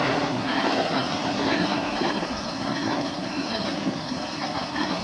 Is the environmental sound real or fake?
fake